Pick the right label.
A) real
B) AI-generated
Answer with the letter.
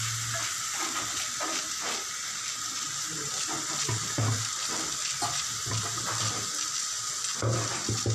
A